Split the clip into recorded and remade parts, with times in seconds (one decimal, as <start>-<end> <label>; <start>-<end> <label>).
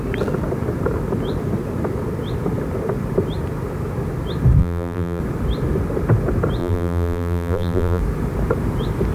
0.0-4.6 recorded; 4.6-5.2 remade; 5.2-6.6 recorded; 6.6-8.0 remade; 8.0-9.1 recorded